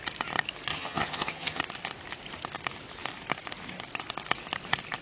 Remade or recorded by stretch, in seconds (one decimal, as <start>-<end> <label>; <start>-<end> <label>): 0.0-0.7 recorded; 0.7-1.6 remade; 1.6-5.0 recorded